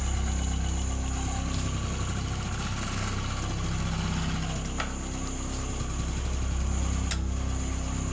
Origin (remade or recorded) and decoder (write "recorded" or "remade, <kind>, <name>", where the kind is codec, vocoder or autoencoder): recorded